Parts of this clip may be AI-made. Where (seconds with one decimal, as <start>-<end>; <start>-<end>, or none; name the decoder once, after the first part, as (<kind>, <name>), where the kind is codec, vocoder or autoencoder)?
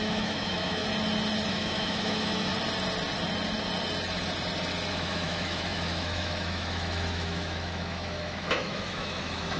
0.0-0.8 (autoencoder, DAC-VAE); 1.5-2.5; 4.9-9.6